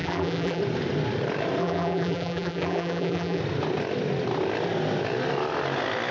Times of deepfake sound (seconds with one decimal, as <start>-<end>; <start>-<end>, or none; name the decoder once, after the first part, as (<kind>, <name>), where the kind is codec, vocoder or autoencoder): 0.0-0.6 (vocoder, BigVGAN v2); 1.6-3.4

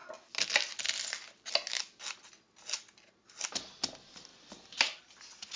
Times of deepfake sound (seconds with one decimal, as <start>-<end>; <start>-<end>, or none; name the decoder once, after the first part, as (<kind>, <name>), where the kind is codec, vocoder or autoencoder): none

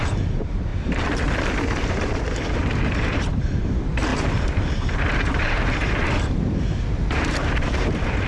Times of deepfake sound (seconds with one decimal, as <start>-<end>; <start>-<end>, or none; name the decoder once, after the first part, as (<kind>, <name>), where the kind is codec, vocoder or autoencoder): 0.0-8.3 (vocoder, BigVGAN v2)

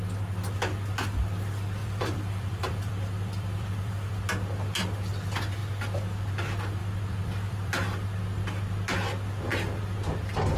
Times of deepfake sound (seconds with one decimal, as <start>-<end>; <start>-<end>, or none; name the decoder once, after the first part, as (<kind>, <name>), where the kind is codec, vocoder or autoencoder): 1.8-4.1 (vocoder, BigVGAN v2); 6.8-7.7

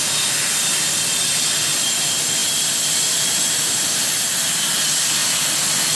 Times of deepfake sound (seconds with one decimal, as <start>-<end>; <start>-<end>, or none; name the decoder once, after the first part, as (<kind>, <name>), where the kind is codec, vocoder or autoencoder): 2.4-4.8 (vocoder, BigVGAN v2); 5.2-5.9